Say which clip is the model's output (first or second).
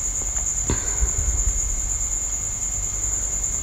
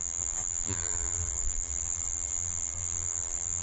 second